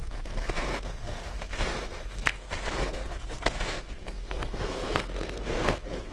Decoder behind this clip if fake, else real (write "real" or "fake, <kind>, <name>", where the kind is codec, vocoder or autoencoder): fake, codec, SNAC